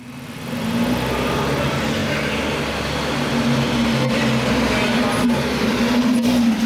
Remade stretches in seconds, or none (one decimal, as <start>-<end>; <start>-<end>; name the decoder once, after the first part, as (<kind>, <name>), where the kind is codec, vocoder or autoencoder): none